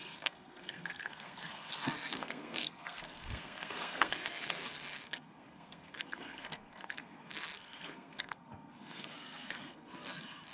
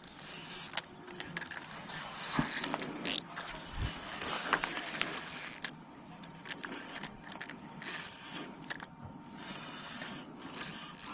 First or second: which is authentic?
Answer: second